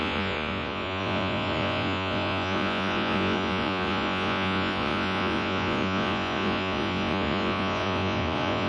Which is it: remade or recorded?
remade